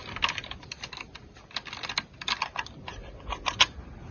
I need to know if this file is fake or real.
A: real